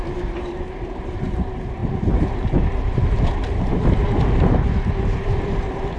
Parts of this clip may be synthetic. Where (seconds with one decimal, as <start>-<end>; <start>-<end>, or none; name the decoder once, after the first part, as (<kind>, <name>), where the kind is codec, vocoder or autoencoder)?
0.0-6.0 (vocoder, BigVGAN v2)